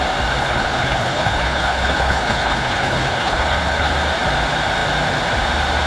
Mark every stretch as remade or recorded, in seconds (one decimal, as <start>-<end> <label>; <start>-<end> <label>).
0.0-0.4 recorded; 0.4-3.9 remade; 3.9-5.9 recorded